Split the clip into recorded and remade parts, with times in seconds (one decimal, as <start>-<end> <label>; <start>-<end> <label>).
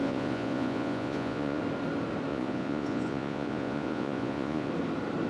0.0-1.6 remade; 1.6-2.3 recorded; 2.3-4.7 remade; 4.7-5.3 recorded